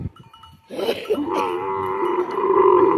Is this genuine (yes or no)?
no